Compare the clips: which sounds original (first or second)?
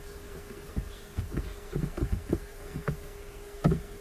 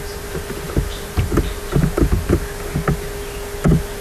second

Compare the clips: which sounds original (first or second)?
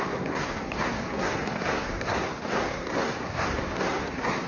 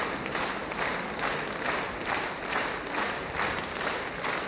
second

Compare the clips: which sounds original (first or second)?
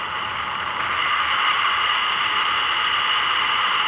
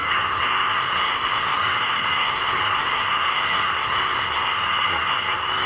first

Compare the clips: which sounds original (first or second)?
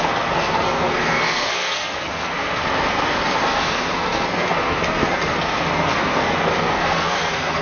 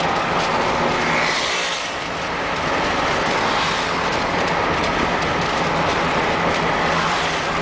second